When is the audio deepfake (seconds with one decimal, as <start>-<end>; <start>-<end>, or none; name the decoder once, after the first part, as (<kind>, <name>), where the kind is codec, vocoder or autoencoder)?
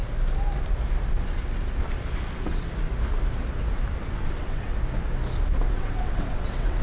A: 4.1-4.7 (vocoder, WaveNeXt); 5.7-6.8